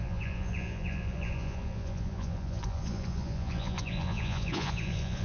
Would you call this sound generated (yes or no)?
yes